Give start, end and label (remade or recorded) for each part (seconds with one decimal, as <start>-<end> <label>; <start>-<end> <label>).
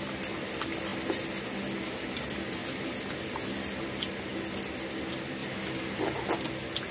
0.0-6.9 recorded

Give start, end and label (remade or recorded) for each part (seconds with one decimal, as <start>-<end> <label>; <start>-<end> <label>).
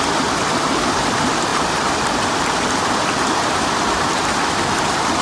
0.0-5.2 remade